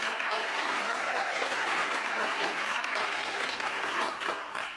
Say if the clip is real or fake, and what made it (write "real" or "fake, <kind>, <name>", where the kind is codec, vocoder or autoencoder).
fake, codec, SNAC